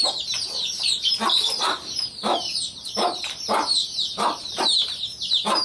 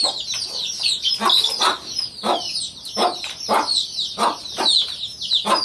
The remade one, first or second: first